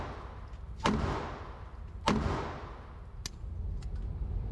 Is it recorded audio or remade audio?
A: recorded